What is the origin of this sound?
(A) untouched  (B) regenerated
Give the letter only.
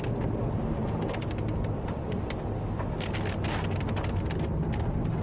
A